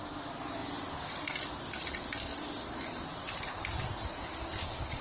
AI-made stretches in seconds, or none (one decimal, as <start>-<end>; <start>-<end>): none